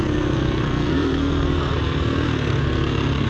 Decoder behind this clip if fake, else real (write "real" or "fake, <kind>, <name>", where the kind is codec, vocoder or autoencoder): fake, codec, SNAC